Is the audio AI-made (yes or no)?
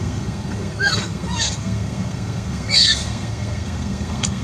yes